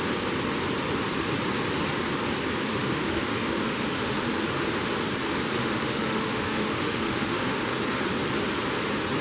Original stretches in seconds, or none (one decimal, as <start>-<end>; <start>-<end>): 0.0-2.7; 4.3-5.6; 7.7-9.2